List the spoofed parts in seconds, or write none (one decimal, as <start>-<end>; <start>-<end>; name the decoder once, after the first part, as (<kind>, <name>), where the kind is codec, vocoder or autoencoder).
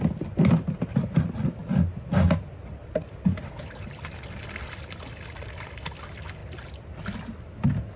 none